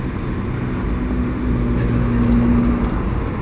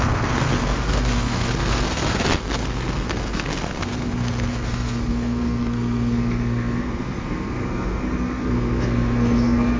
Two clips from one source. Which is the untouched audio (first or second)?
first